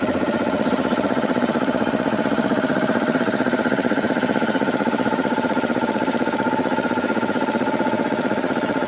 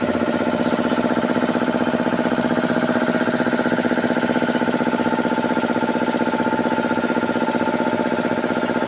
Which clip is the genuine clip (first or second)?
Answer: second